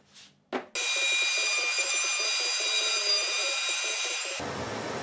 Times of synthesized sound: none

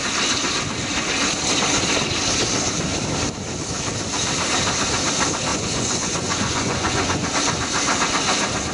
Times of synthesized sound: 5.5-7.3 (vocoder, Vocos)